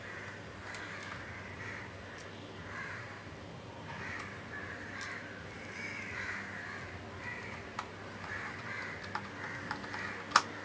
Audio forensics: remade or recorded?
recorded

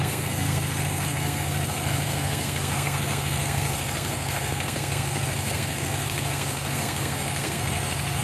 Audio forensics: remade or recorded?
remade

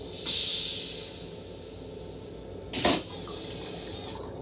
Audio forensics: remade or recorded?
recorded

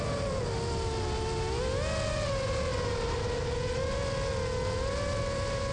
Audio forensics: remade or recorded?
recorded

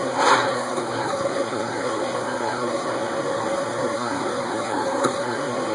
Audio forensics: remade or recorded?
remade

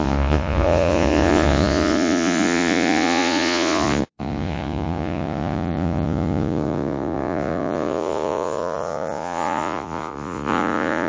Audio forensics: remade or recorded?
remade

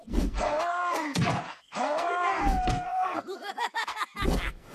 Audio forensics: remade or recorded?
remade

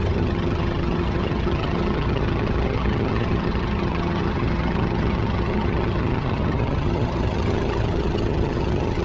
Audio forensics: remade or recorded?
remade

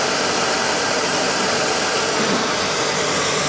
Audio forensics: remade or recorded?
recorded